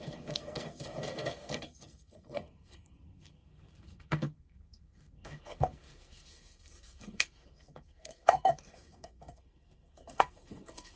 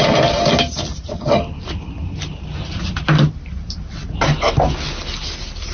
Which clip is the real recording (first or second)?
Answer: second